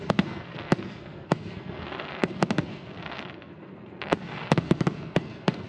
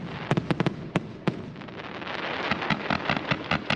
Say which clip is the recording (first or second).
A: second